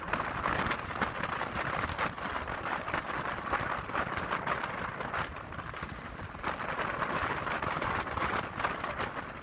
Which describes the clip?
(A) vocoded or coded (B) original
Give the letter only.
B